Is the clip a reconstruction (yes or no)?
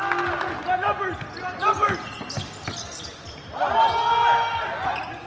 no